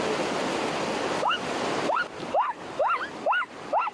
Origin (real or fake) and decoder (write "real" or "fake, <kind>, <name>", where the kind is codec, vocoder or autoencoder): real